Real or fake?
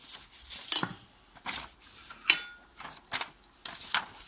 real